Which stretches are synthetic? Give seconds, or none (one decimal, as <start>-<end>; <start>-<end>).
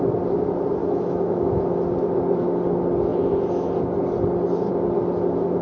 0.8-1.7